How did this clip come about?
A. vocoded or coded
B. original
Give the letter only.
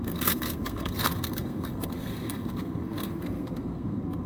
A